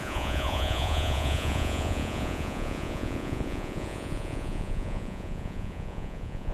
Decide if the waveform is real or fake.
fake